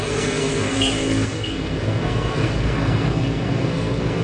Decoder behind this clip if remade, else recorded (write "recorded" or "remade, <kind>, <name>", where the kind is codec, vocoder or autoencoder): remade, codec, SNAC